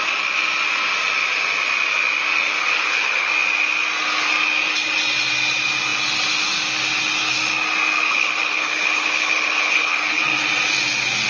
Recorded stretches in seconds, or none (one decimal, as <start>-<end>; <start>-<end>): 0.0-2.6; 3.3-8.1; 10.2-11.3